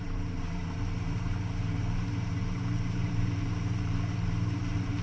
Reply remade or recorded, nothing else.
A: remade